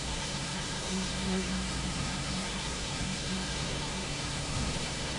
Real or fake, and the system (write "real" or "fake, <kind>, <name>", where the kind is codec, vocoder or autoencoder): fake, codec, SNAC